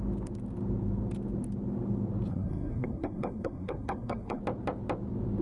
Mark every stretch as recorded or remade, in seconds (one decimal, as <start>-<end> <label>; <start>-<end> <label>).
0.0-2.3 recorded; 2.3-4.4 remade; 4.4-5.4 recorded